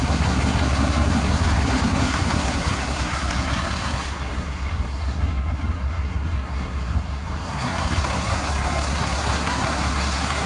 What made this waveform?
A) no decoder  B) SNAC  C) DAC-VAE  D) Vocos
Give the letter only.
B